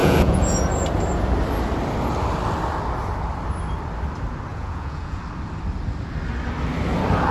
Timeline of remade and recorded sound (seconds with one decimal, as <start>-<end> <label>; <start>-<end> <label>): 0.0-0.6 remade; 0.6-4.5 recorded; 4.5-5.2 remade; 5.2-7.3 recorded